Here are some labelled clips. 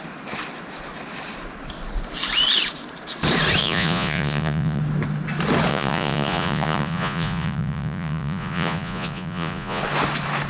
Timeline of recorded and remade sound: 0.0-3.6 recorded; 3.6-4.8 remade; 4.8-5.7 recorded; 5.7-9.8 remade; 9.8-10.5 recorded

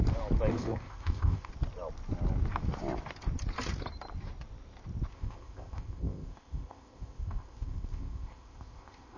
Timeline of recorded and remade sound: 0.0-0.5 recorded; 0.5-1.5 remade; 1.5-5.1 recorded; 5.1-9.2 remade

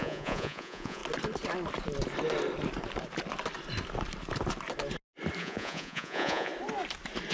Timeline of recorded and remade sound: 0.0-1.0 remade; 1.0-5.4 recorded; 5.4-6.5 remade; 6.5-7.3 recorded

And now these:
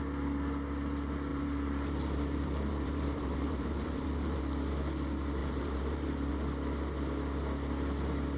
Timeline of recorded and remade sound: 0.0-1.3 recorded; 1.3-4.4 remade; 4.4-5.4 recorded; 5.4-6.3 remade; 6.3-8.4 recorded

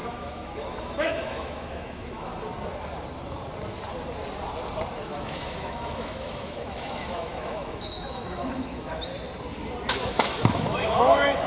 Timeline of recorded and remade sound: 0.0-2.3 remade; 2.3-5.0 recorded; 5.0-9.1 remade; 9.1-10.1 recorded; 10.1-11.5 remade